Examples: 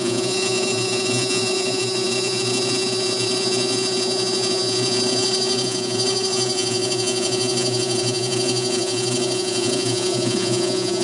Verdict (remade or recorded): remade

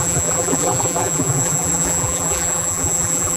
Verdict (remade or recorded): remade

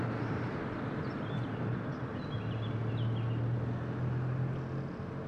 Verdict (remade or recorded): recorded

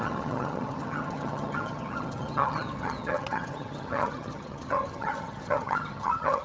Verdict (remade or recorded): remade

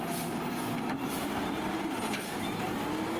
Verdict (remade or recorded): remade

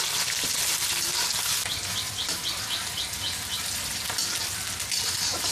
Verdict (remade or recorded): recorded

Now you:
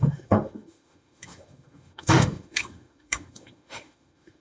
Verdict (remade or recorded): remade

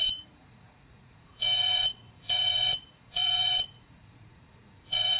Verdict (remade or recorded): remade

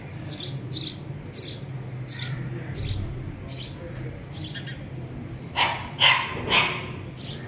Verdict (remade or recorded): recorded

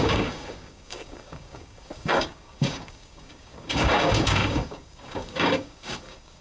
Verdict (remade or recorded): remade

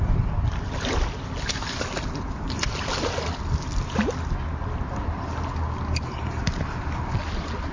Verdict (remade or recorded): recorded